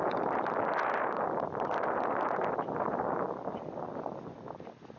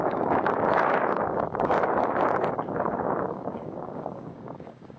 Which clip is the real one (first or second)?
first